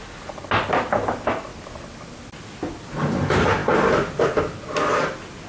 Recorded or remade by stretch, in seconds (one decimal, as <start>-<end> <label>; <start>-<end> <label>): 0.0-5.5 recorded